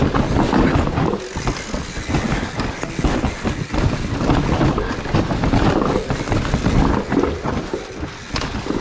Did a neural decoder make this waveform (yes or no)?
no